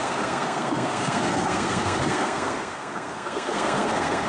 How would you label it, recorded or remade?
remade